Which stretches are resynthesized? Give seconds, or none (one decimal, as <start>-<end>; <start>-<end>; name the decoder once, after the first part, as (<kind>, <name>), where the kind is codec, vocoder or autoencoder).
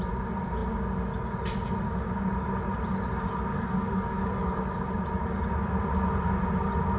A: 3.5-4.8 (codec, DAC)